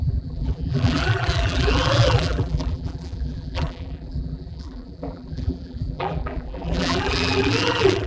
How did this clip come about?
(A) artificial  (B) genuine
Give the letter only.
A